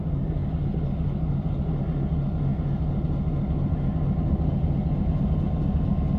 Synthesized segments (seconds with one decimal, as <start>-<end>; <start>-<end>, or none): none